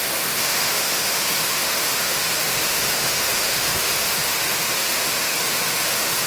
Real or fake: fake